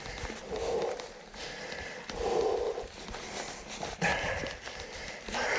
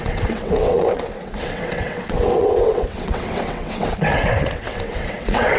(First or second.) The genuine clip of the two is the first